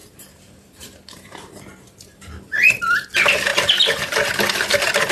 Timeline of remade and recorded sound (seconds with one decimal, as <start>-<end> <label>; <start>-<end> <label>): 0.0-3.1 remade; 3.1-5.1 recorded